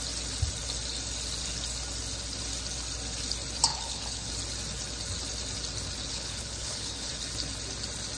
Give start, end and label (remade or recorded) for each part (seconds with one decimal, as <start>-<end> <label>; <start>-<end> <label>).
0.0-3.7 recorded; 3.7-4.3 remade; 4.3-6.1 recorded; 6.1-7.1 remade; 7.1-8.2 recorded